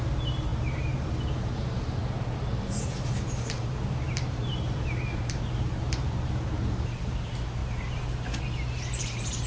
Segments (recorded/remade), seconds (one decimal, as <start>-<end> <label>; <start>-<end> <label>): 0.0-2.0 remade; 2.0-2.6 recorded; 2.6-9.5 remade